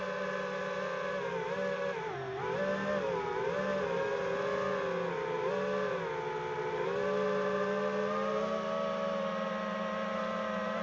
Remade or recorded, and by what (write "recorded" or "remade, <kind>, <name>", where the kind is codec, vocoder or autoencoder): recorded